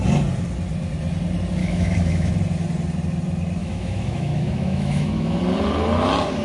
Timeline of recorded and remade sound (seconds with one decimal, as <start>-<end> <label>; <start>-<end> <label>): 0.0-1.6 recorded; 1.6-2.3 remade; 2.3-3.6 recorded; 3.6-5.4 remade; 5.4-6.4 recorded

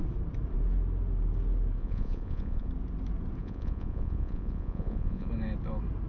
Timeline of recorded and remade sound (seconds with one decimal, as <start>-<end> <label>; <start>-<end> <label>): 0.0-1.8 recorded; 1.8-2.7 remade; 2.7-3.4 recorded; 3.4-5.3 remade; 5.3-6.1 recorded

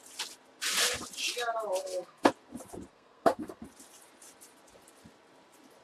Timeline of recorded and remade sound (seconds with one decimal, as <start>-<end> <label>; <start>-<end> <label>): 0.0-1.8 recorded; 1.8-2.3 remade; 2.3-2.9 recorded; 2.9-3.6 remade; 3.6-5.8 recorded

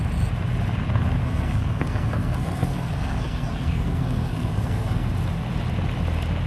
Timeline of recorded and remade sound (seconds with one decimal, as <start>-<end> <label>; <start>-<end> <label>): 0.0-1.2 recorded; 1.2-5.1 remade; 5.1-6.5 recorded

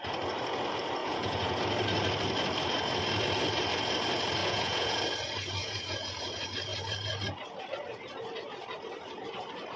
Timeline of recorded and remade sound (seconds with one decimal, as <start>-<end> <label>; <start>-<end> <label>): 0.0-1.0 recorded; 1.0-1.6 remade; 1.6-4.4 recorded; 4.4-5.0 remade; 5.0-5.6 recorded; 5.6-6.2 remade; 6.2-9.8 recorded